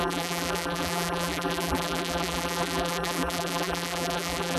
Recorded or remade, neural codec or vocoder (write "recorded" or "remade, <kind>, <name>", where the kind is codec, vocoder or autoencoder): remade, vocoder, BigVGAN v2